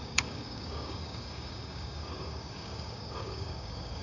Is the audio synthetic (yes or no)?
yes